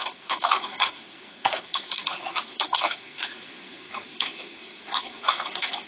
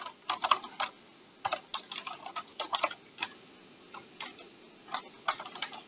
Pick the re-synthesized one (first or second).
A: first